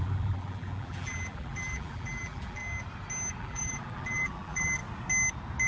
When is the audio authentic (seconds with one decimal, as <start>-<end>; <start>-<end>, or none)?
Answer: 2.6-3.4; 4.8-5.7